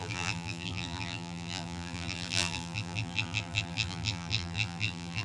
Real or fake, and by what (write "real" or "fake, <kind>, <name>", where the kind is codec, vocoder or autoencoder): fake, vocoder, BigVGAN v2